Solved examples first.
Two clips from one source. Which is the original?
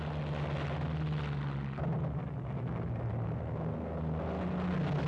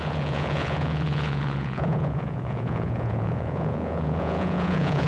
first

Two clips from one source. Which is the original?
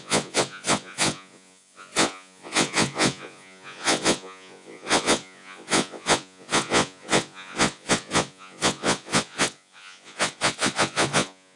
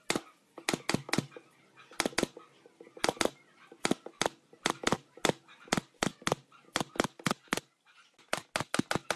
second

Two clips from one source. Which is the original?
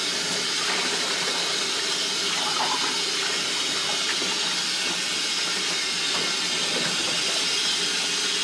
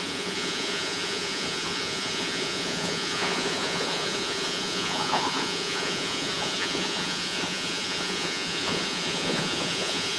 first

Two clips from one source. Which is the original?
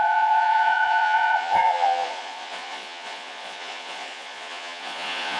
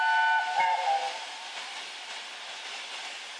second